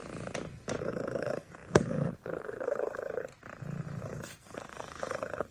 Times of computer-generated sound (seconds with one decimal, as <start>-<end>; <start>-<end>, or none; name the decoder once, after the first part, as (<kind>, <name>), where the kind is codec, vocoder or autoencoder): 0.8-3.3 (codec, SNAC); 4.0-5.5